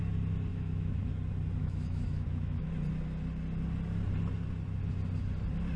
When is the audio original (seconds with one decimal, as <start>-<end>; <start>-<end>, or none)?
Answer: 0.0-0.5; 1.0-1.6; 2.7-5.8